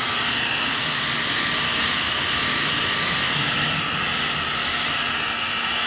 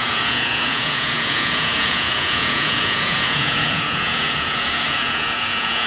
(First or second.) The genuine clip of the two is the first